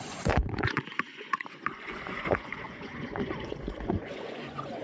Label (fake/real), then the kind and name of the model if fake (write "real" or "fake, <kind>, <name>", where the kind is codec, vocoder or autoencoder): fake, vocoder, Vocos